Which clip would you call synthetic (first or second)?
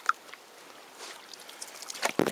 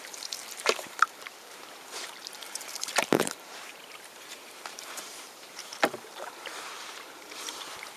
second